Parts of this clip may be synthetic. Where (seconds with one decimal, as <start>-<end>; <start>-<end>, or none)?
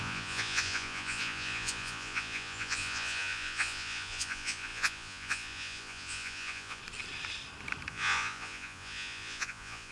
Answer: 0.0-6.8; 7.9-9.9